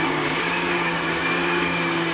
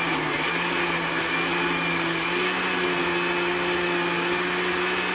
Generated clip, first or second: first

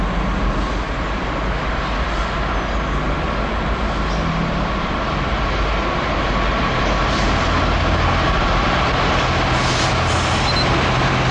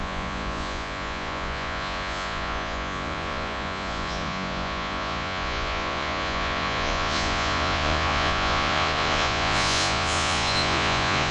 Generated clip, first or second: second